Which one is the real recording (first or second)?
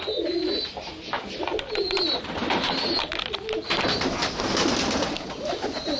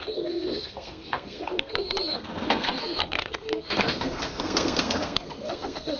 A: first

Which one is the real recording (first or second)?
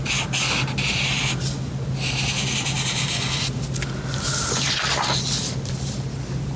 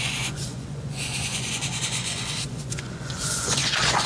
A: first